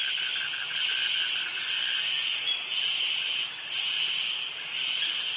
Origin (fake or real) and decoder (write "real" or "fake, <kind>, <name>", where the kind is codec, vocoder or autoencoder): real